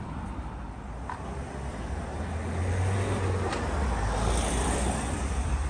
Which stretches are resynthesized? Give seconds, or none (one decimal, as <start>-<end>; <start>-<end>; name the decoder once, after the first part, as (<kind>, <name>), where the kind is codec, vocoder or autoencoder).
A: 0.0-2.1 (vocoder, BigVGAN v2); 4.5-5.7